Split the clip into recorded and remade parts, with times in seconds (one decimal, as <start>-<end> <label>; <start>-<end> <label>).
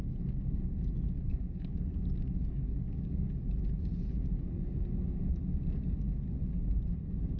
0.0-1.3 recorded; 1.3-3.3 remade; 3.3-7.4 recorded